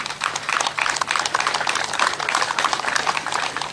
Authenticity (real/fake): fake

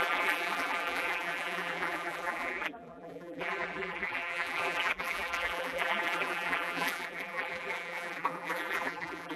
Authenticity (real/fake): fake